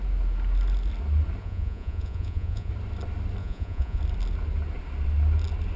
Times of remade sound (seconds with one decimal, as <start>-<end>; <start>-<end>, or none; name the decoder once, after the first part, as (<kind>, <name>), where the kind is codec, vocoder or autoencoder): 1.4-2.7 (vocoder, Vocos); 3.4-4.0